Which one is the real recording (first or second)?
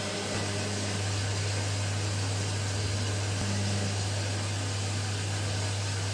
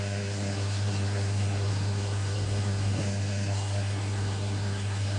first